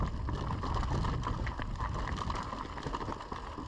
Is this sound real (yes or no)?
yes